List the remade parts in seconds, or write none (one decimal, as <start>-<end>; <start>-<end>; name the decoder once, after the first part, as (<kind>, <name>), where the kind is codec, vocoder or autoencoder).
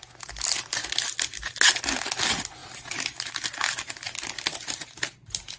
none